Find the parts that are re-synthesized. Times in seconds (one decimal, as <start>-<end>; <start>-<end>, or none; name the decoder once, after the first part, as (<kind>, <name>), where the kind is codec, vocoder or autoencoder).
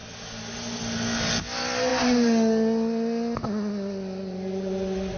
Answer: none